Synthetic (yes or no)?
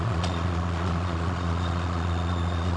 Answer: yes